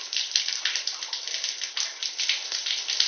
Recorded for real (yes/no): no